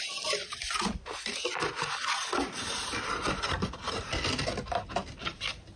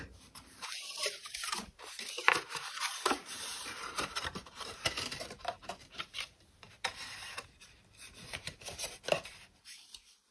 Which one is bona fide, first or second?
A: first